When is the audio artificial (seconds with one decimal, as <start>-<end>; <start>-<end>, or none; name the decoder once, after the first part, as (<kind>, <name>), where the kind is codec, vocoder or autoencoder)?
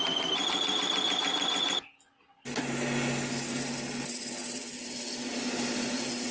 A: none